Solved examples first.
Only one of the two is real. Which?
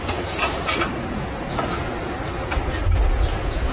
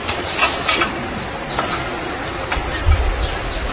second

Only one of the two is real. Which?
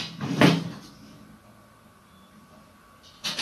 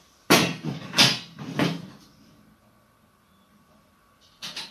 first